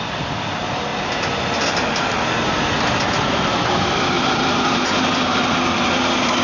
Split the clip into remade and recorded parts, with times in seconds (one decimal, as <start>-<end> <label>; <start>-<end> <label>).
0.0-0.9 remade; 0.9-3.8 recorded; 3.8-6.4 remade